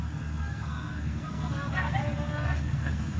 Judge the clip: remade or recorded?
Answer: remade